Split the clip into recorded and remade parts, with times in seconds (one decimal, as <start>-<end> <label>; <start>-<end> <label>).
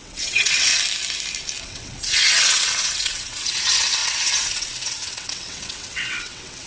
0.0-0.7 remade; 0.7-1.6 recorded; 1.6-6.7 remade